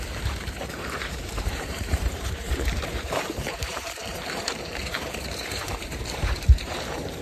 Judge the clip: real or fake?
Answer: fake